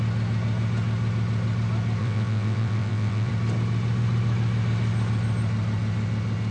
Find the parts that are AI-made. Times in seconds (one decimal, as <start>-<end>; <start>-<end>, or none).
2.0-3.3